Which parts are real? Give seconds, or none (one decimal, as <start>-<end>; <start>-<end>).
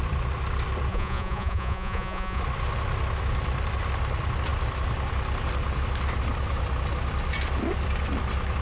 0.0-0.9; 2.4-8.6